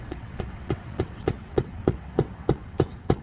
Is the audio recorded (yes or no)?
no